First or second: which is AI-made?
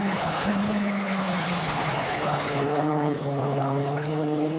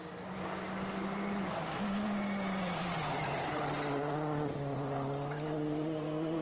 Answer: first